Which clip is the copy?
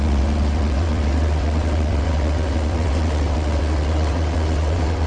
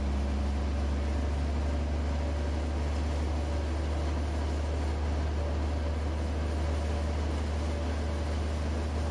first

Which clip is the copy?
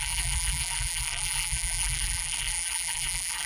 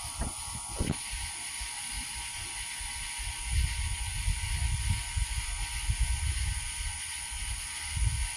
first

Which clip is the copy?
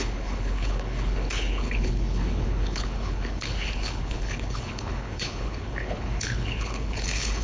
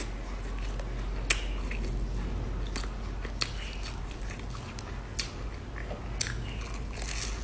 first